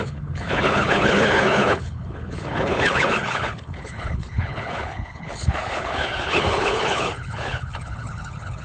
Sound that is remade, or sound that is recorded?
remade